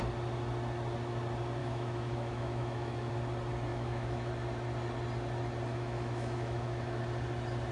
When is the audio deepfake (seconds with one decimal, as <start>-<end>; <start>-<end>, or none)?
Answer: 1.6-3.1; 3.7-4.3; 5.7-7.0